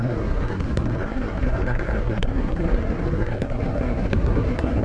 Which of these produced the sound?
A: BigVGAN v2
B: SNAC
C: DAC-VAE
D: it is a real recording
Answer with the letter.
B